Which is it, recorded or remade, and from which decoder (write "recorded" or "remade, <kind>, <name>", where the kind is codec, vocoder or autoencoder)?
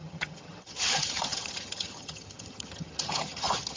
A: remade, vocoder, HiFi-GAN